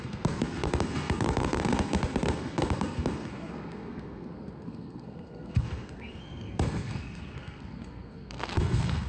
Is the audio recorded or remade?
remade